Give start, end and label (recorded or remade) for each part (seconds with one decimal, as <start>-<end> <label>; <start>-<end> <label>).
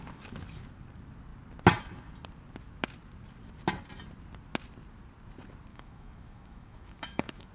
0.0-5.7 recorded; 5.7-7.5 remade